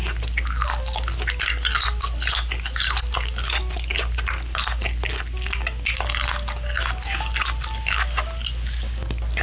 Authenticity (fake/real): real